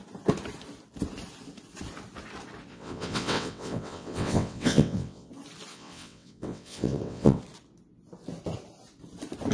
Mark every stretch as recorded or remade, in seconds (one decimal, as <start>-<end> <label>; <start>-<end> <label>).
0.0-2.7 recorded; 2.7-5.3 remade; 5.3-5.7 recorded; 5.7-7.4 remade; 7.4-9.5 recorded